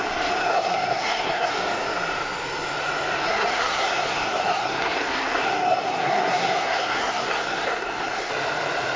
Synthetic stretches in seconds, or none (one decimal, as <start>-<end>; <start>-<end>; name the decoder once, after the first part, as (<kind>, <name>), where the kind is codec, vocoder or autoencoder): 0.4-1.5 (codec, SNAC); 3.2-8.3